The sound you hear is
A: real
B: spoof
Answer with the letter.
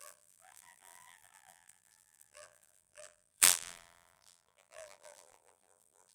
B